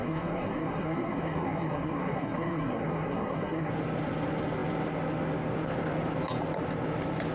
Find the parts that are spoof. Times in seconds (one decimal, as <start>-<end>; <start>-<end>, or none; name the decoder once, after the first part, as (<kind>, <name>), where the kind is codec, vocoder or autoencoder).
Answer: 0.0-3.7 (codec, SNAC)